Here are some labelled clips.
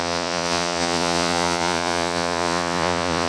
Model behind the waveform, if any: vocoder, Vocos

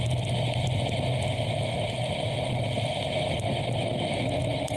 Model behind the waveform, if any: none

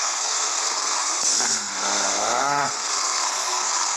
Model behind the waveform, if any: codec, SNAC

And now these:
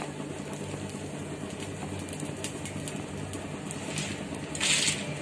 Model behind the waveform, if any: none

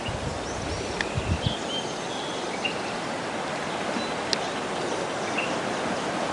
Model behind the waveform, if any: none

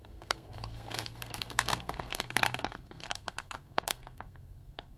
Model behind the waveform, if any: codec, SNAC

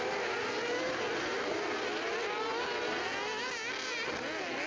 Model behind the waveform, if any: none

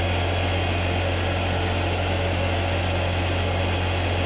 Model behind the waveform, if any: none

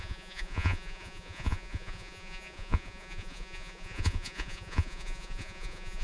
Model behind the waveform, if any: vocoder, Vocos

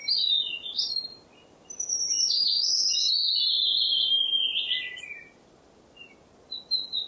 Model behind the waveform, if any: none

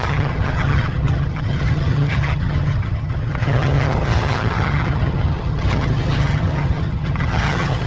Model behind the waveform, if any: vocoder, HiFi-GAN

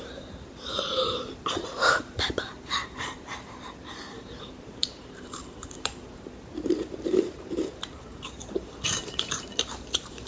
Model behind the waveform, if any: vocoder, BigVGAN v2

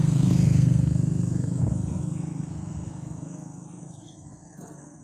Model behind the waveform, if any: codec, SNAC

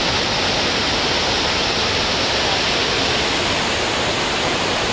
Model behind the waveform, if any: none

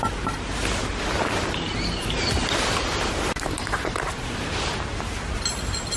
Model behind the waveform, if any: none